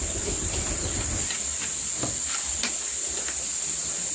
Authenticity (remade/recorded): recorded